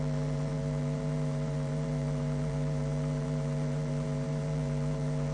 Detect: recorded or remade remade